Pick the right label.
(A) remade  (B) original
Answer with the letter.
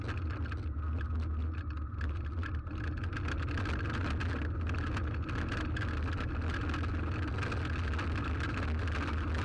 B